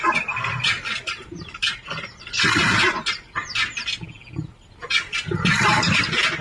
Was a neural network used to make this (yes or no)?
no